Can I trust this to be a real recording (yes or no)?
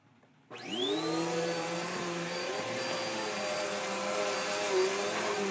yes